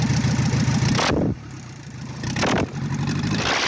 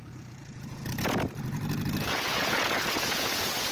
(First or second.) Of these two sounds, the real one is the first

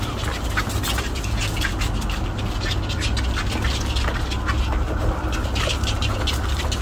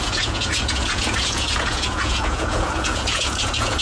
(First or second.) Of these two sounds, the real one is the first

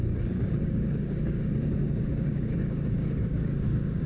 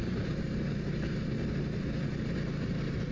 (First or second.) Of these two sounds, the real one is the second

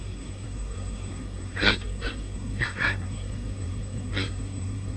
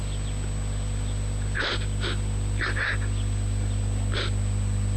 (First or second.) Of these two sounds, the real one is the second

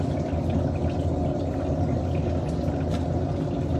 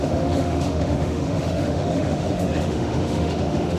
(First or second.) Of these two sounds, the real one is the first